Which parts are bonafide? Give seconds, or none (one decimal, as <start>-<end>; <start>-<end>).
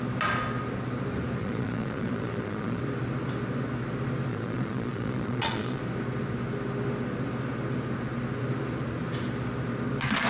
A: 0.0-1.4; 2.8-4.3; 5.8-10.3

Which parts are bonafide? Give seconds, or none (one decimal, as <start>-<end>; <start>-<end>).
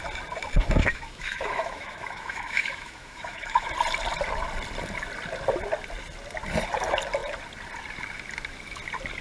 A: 0.0-0.8; 3.7-9.2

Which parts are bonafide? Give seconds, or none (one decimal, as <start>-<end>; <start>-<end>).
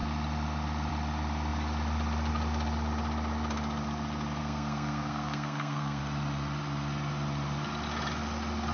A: 0.0-4.4; 6.0-8.7